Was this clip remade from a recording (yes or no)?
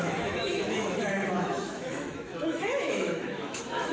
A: yes